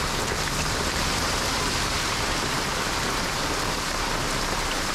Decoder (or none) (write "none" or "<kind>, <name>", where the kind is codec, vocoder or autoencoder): vocoder, BigVGAN v2